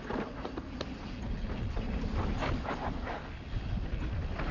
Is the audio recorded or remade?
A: recorded